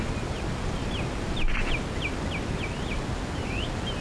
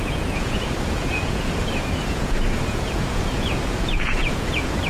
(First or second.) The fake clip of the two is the second